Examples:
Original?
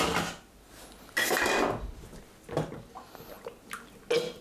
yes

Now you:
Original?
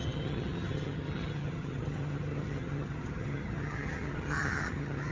no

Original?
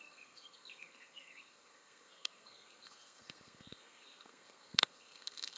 no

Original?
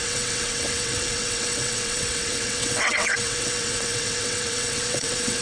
no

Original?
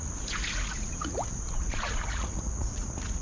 no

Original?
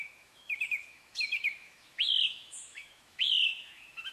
no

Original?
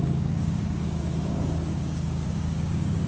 no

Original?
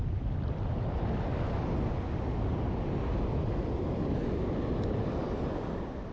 yes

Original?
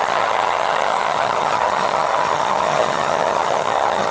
no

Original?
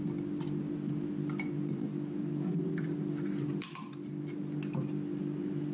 yes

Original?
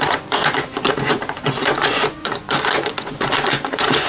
no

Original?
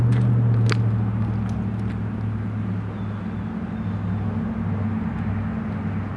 yes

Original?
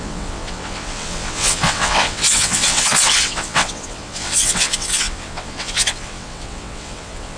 no